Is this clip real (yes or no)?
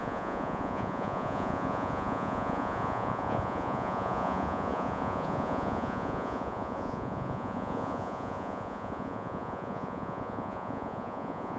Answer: no